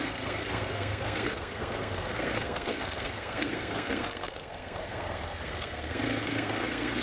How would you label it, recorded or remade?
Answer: remade